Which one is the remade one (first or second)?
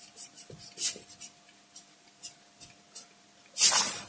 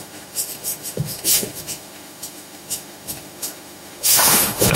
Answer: second